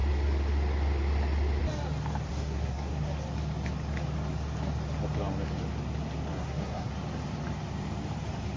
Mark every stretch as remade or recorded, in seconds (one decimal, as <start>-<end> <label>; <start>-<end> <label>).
0.0-2.3 recorded; 2.3-3.1 remade; 3.1-6.3 recorded; 6.3-6.9 remade; 6.9-8.6 recorded